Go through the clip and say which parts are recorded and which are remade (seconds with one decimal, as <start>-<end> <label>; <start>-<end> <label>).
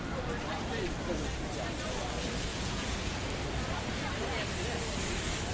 0.0-2.5 recorded; 2.5-3.3 remade; 3.3-5.5 recorded